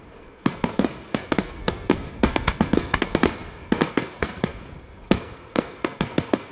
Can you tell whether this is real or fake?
fake